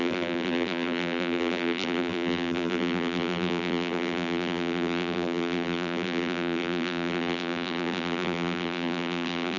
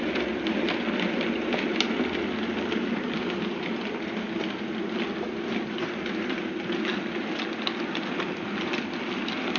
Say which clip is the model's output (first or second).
first